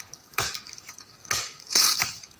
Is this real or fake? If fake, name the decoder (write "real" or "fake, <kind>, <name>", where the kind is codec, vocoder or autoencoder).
fake, codec, DAC